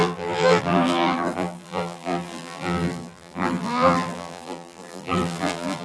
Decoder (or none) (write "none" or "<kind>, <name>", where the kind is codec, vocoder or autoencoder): vocoder, BigVGAN v2